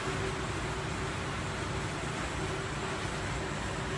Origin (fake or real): real